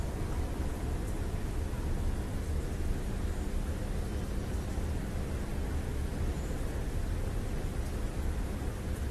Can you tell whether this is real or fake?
real